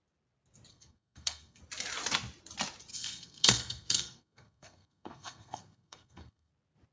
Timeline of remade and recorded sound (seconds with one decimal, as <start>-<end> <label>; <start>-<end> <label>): 0.0-0.7 recorded; 0.7-1.6 remade; 1.6-2.9 recorded; 2.9-6.5 remade; 6.5-6.9 recorded